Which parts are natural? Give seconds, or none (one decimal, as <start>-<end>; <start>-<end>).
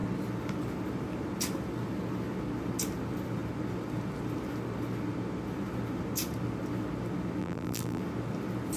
0.0-7.4; 8.0-8.8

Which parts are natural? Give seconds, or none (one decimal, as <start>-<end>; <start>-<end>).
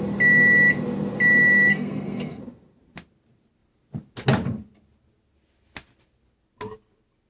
0.0-1.7; 2.4-7.3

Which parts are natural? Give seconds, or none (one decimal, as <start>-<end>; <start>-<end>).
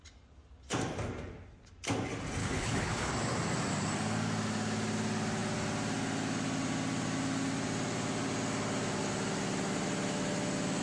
0.0-2.4; 3.1-10.8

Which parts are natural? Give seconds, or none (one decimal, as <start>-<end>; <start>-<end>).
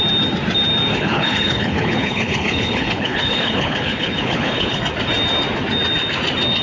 0.0-0.9; 4.8-6.6